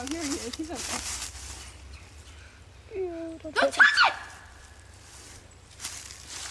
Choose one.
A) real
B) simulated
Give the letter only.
A